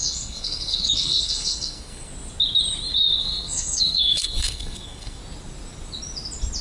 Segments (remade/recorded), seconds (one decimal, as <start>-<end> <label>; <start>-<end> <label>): 0.0-2.1 remade; 2.1-3.2 recorded; 3.2-5.2 remade; 5.2-6.6 recorded